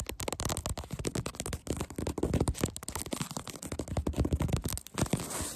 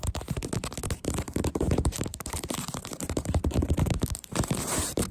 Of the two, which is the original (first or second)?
first